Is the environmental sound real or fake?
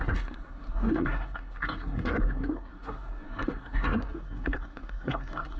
fake